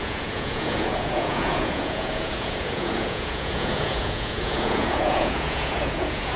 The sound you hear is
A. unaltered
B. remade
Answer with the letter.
B